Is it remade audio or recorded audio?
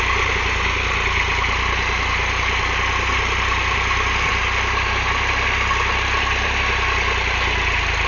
recorded